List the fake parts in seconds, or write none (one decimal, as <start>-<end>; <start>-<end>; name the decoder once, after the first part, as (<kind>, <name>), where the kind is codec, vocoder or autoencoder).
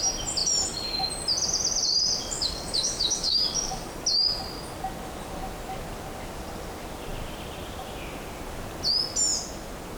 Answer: 2.2-3.9 (codec, DAC)